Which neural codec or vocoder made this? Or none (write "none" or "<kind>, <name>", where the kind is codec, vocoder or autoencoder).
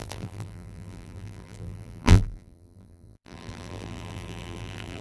vocoder, BigVGAN v2